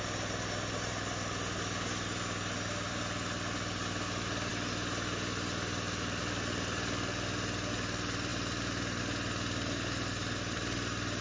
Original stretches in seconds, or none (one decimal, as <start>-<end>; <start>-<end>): 0.0-11.2